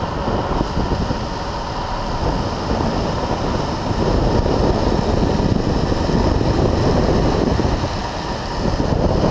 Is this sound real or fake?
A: real